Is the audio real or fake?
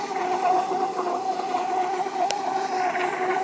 fake